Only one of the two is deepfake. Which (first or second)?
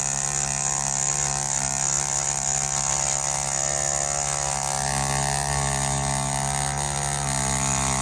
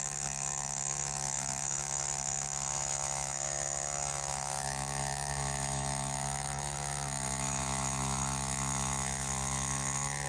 second